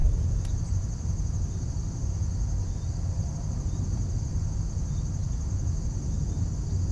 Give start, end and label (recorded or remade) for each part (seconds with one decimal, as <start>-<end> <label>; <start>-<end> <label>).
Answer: 0.0-6.9 recorded